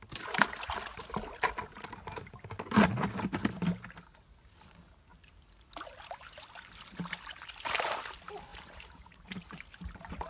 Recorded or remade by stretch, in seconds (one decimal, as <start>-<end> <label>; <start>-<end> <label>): 0.0-8.5 recorded; 8.5-9.4 remade; 9.4-10.3 recorded